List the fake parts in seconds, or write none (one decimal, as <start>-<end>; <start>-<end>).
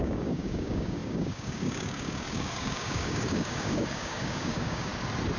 0.0-4.9